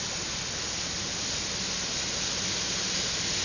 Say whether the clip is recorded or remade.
recorded